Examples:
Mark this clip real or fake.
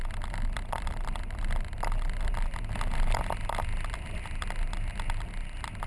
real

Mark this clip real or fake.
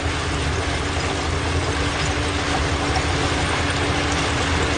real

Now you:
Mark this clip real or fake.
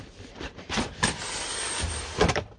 real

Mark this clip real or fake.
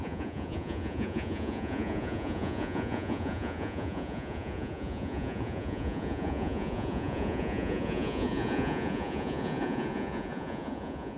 fake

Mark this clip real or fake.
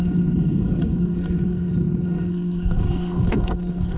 fake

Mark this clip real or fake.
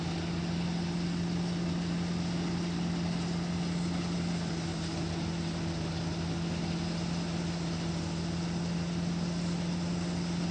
real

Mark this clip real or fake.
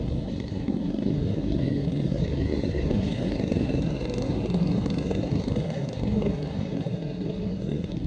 fake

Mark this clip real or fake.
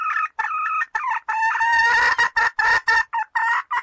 real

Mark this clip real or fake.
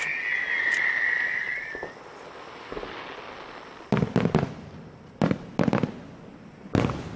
real